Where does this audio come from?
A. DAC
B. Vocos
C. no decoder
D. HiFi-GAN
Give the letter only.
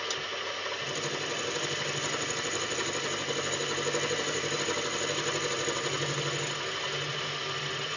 C